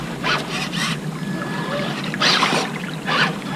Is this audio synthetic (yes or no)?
no